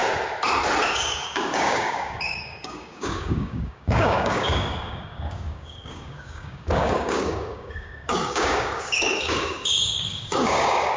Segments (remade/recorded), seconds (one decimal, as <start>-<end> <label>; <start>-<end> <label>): 0.0-0.8 recorded; 0.8-11.0 remade